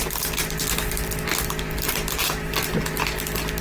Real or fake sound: real